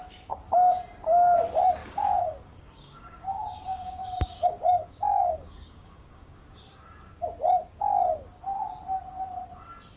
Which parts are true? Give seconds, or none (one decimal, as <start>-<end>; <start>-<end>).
0.0-1.8; 6.6-10.0